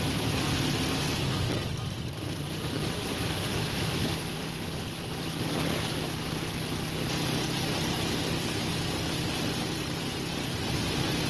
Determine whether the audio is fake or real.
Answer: real